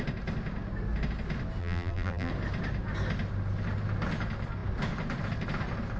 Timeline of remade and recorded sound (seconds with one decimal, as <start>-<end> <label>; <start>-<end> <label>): 0.0-1.6 recorded; 1.6-2.3 remade; 2.3-6.0 recorded

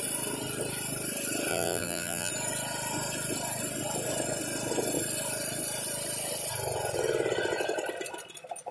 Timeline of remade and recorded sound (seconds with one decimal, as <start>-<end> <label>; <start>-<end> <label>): 0.0-1.5 recorded; 1.5-2.3 remade; 2.3-8.7 recorded

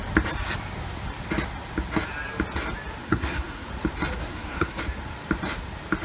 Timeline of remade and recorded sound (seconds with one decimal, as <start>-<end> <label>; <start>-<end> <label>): 0.0-3.0 recorded; 3.0-3.7 remade; 3.7-4.2 recorded; 4.2-4.8 remade; 4.8-6.0 recorded

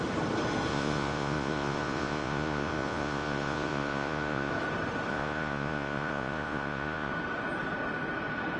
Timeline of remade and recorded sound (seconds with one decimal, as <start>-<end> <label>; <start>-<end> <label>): 0.0-0.7 recorded; 0.7-4.5 remade; 4.5-5.1 recorded; 5.1-7.1 remade; 7.1-8.6 recorded

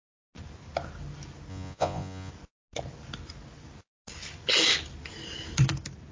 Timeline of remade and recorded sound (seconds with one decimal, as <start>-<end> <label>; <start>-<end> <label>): 0.0-1.5 recorded; 1.5-2.3 remade; 2.3-6.1 recorded

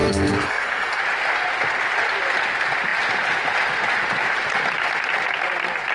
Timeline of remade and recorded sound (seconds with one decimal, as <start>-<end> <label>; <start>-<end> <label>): 0.0-1.0 remade; 1.0-5.9 recorded

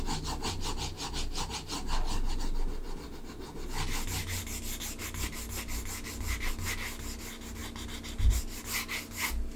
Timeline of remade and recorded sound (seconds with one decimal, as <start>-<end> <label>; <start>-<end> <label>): 0.0-9.6 recorded